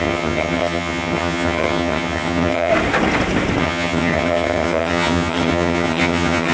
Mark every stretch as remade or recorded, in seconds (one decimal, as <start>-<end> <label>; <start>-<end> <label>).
0.0-2.7 remade; 2.7-3.6 recorded; 3.6-6.5 remade